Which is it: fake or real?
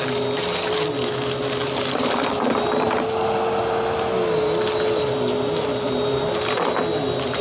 real